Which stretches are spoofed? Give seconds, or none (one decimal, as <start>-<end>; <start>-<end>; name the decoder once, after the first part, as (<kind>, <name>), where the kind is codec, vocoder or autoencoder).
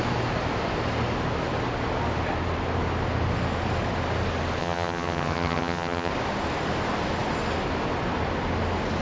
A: 4.6-6.1 (vocoder, HiFi-GAN)